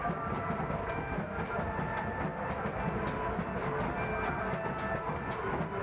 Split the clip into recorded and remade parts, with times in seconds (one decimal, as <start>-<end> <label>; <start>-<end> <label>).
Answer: 0.0-5.8 recorded